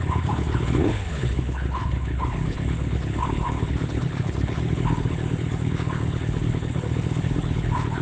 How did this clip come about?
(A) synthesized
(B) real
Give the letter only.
A